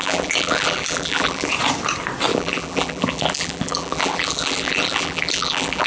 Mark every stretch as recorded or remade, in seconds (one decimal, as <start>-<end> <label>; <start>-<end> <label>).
0.0-1.5 remade; 1.5-2.3 recorded; 2.3-5.9 remade